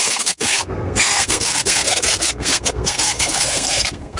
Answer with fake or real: fake